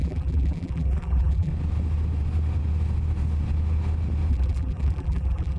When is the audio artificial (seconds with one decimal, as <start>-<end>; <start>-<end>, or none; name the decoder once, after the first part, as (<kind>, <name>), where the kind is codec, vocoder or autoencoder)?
0.0-1.5 (vocoder, BigVGAN v2); 4.3-5.6